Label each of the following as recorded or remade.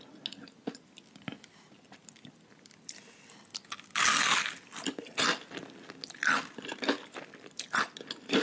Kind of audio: recorded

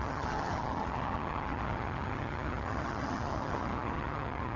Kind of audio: remade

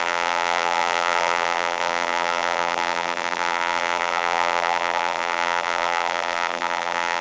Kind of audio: remade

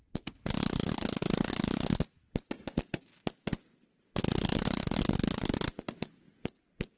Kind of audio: recorded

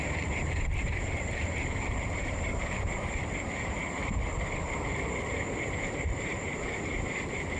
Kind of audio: remade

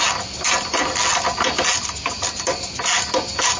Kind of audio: recorded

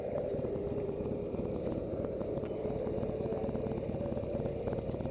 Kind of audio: recorded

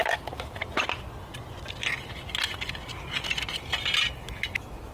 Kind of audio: recorded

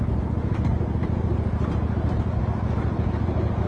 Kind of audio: recorded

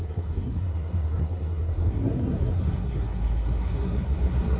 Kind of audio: remade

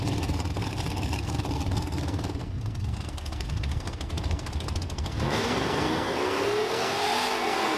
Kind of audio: remade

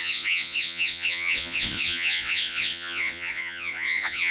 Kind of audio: remade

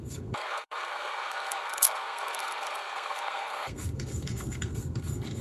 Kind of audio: remade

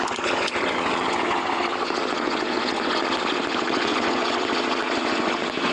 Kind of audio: remade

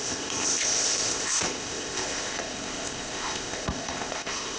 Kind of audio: remade